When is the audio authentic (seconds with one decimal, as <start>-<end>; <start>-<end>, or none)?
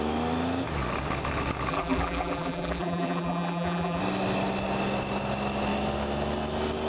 0.0-1.7; 4.0-6.9